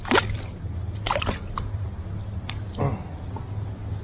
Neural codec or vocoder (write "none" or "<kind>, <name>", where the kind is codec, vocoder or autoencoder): none